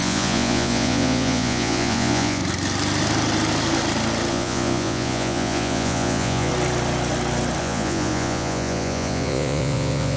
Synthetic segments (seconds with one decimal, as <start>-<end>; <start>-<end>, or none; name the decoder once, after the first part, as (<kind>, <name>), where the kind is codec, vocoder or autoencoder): 0.0-2.4 (vocoder, Vocos); 4.3-6.5; 7.6-10.2